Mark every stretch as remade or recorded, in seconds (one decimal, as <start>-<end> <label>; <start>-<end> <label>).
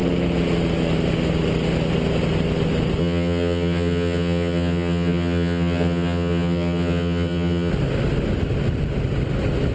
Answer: 0.0-3.0 recorded; 3.0-7.7 remade; 7.7-9.7 recorded